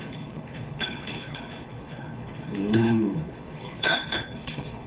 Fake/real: fake